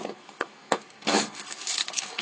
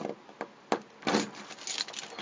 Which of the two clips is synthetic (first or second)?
first